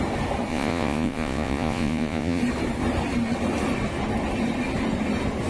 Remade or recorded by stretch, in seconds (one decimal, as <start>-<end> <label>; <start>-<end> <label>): 0.0-0.5 recorded; 0.5-2.4 remade; 2.4-5.5 recorded